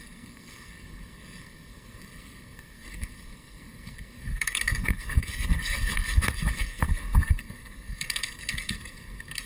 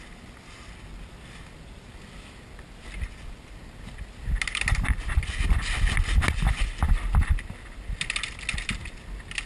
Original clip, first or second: second